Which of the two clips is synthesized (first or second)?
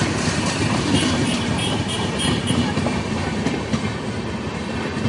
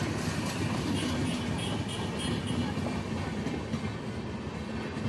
first